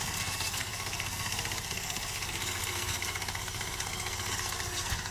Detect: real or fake fake